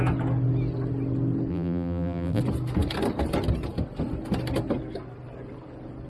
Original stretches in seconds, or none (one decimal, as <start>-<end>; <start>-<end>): 0.0-1.5; 2.4-6.1